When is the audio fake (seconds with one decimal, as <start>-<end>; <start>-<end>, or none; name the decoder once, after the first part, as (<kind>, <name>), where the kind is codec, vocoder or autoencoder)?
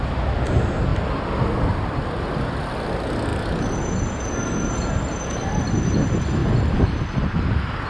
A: 0.9-2.2 (vocoder, BigVGAN v2); 6.4-7.9